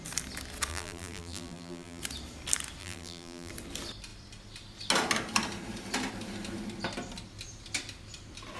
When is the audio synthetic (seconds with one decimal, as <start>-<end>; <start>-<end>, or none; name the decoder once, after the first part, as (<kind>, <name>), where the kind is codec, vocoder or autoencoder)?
0.7-2.0 (vocoder, BigVGAN v2); 2.8-3.5